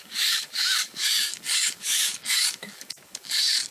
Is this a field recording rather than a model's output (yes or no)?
no